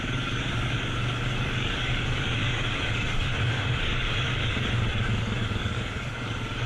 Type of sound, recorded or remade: remade